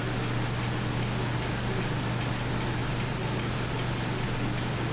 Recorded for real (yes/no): yes